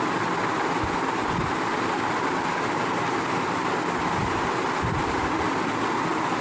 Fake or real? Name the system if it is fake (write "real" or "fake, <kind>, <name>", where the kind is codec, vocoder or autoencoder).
real